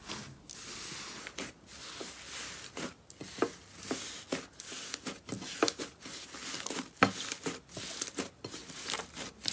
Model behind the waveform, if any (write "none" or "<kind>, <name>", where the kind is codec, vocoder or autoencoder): none